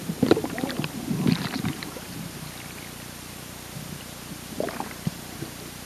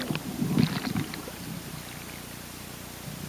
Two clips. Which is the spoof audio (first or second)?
first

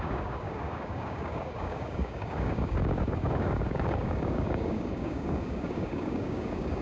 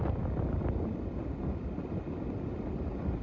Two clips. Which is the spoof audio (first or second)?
first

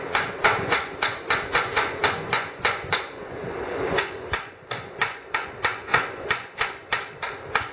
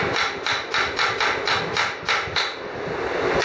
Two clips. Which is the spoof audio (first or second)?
first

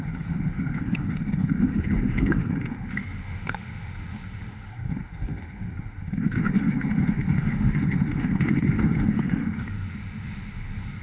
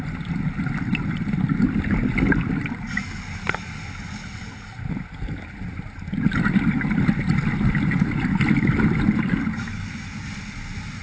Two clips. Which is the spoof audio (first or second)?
first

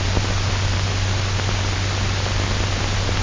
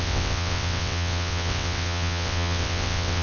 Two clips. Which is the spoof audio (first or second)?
second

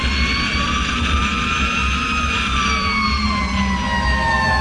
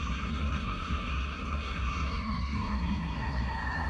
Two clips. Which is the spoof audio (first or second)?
second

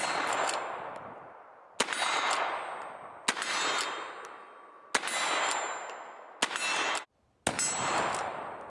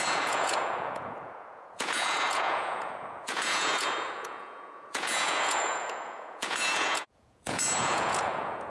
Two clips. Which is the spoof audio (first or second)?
second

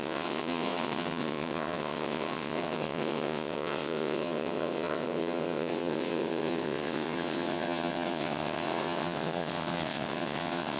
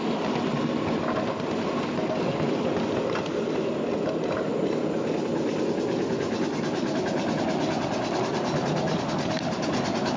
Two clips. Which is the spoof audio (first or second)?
first